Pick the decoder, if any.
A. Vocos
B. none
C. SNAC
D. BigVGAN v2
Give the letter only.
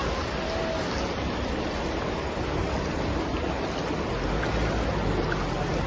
B